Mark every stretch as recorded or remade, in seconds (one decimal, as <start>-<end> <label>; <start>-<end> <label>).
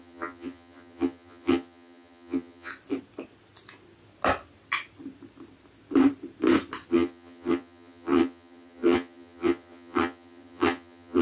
0.0-2.7 remade; 2.7-6.9 recorded; 6.9-11.2 remade